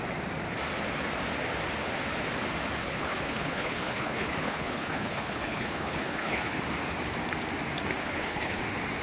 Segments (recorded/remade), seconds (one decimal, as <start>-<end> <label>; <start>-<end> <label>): 0.0-2.8 recorded; 2.8-6.6 remade; 6.6-8.0 recorded; 8.0-8.6 remade; 8.6-9.0 recorded